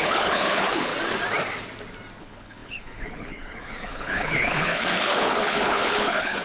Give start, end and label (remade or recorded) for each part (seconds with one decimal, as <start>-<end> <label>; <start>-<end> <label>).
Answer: 0.0-0.9 remade; 0.9-2.2 recorded; 2.2-6.4 remade